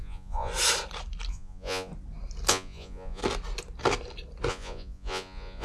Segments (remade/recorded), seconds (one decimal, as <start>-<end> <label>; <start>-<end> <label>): 0.0-0.5 remade; 0.5-1.3 recorded; 1.3-1.9 remade; 1.9-2.5 recorded; 2.5-3.2 remade; 3.2-4.5 recorded; 4.5-5.6 remade